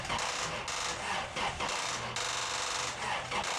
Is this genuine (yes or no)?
yes